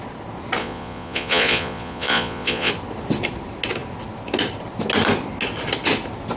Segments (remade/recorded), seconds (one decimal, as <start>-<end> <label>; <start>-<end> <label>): 0.0-0.6 recorded; 0.6-2.7 remade; 2.7-6.4 recorded